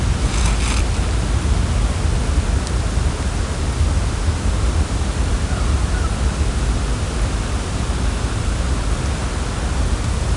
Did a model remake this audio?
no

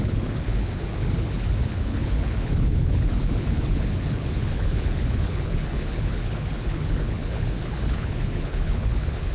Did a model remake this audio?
yes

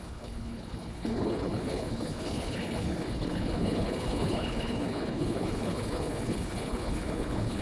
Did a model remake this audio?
yes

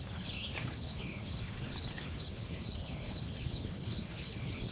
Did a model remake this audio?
yes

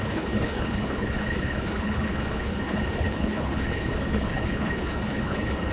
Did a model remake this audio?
yes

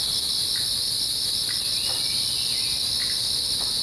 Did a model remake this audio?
no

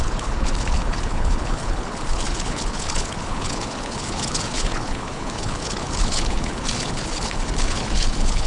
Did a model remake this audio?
yes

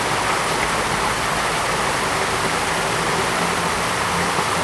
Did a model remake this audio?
no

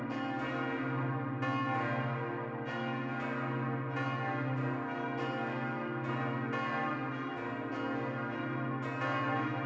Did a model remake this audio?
no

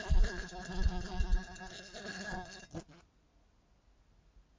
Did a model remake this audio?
no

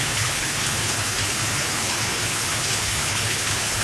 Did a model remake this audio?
yes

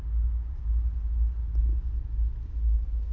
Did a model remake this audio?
no